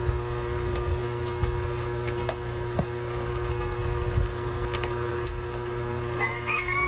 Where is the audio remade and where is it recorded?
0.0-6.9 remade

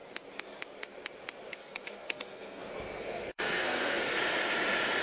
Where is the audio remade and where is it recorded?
0.0-1.5 recorded; 1.5-2.6 remade; 2.6-3.0 recorded; 3.0-4.0 remade; 4.0-5.0 recorded